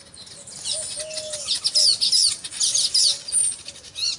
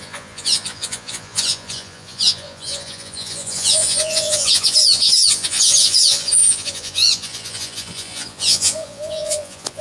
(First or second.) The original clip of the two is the first